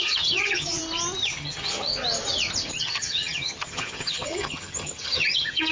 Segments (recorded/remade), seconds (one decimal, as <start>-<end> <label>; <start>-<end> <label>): 0.0-0.8 remade; 0.8-1.3 recorded; 1.3-1.9 remade; 1.9-2.8 recorded; 2.8-5.7 remade